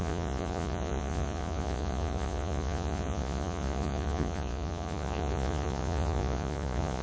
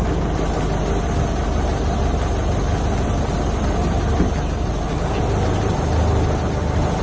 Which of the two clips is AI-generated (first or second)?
first